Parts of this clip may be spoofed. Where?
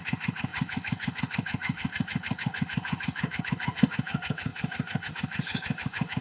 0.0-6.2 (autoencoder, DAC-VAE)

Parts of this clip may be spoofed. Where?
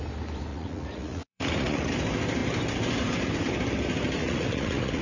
0.5-1.9 (vocoder, Vocos); 4.2-5.0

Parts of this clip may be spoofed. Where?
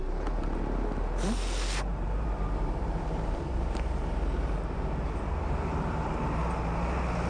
1.9-6.1 (vocoder, BigVGAN v2)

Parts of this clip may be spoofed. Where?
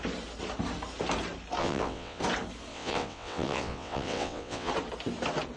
1.6-2.2 (vocoder, WaveNeXt); 2.7-4.7